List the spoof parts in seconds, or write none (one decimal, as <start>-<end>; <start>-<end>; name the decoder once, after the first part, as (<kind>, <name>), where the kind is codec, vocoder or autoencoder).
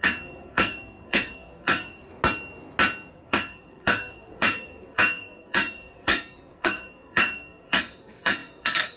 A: 0.0-2.1 (codec, SNAC); 3.1-9.0